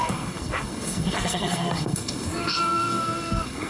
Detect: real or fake fake